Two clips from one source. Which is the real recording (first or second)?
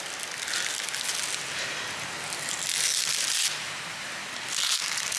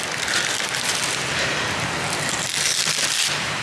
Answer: first